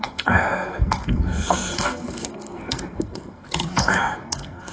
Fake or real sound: fake